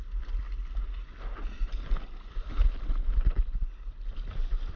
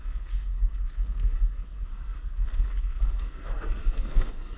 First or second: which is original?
first